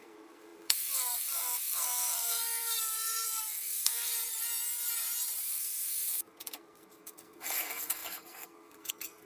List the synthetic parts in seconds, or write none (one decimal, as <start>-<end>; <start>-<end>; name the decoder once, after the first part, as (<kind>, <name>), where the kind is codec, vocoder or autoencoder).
0.0-4.1 (codec, SNAC); 5.5-9.3